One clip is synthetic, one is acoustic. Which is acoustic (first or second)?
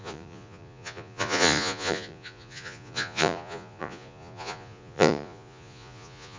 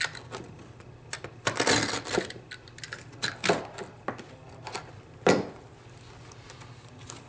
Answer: second